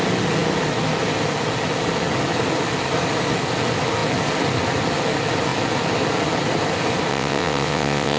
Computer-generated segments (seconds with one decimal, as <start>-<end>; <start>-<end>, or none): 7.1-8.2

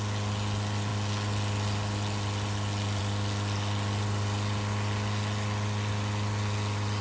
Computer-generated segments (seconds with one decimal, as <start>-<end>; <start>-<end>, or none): none

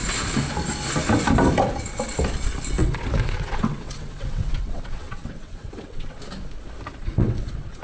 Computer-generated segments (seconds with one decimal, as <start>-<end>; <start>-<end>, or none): 2.8-6.2; 7.0-7.8

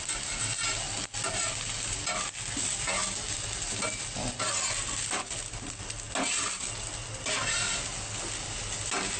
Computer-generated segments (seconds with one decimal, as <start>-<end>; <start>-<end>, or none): none

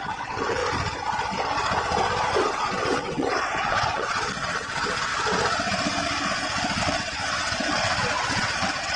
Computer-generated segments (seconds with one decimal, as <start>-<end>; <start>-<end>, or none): 0.0-0.6; 2.3-5.1; 6.8-9.0

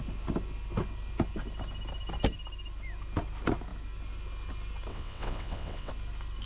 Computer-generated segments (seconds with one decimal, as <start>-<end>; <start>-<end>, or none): 4.9-5.9

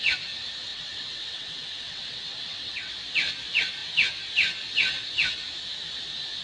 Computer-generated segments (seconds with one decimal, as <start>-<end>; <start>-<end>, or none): 0.7-2.9